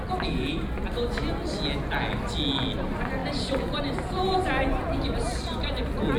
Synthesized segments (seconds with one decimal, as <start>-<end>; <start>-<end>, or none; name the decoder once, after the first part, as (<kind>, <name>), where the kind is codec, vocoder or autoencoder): none